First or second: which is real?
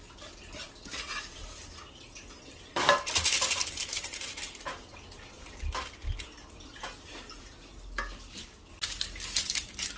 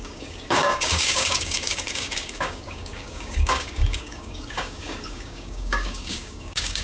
first